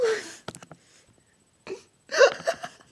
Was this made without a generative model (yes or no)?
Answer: yes